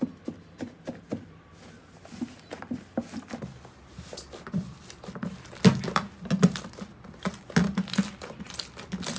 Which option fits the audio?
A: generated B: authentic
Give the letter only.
B